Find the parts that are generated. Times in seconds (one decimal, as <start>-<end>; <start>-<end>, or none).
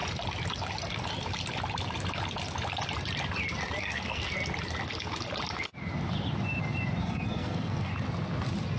3.8-4.4; 7.0-7.9